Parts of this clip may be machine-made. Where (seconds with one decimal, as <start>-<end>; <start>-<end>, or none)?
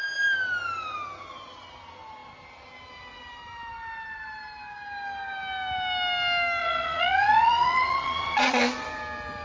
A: 6.6-8.6